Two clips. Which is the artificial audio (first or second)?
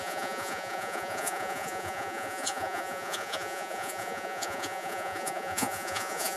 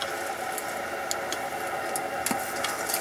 first